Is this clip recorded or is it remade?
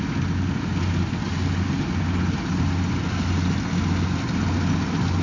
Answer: recorded